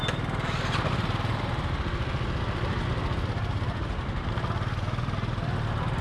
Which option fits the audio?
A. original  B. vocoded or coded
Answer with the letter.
A